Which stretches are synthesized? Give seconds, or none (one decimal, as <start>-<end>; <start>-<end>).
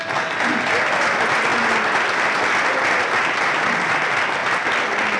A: 1.5-2.5